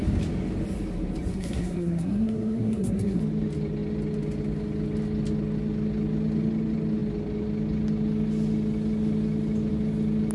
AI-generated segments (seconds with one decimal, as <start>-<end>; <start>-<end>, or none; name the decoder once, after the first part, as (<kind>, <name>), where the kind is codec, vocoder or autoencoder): 1.3-3.2 (codec, SNAC)